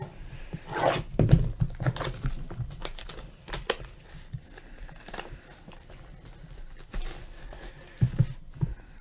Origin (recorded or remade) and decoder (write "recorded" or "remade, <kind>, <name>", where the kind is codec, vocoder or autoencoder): recorded